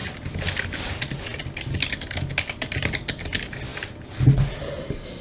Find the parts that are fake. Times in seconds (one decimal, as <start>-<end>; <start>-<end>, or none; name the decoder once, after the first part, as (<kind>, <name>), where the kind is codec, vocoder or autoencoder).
none

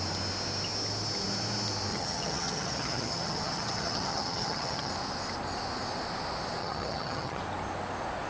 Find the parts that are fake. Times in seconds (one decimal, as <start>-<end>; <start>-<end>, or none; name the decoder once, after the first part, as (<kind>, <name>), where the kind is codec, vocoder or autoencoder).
1.9-4.9 (vocoder, HiFi-GAN); 6.6-7.4